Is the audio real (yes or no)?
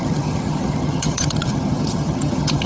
no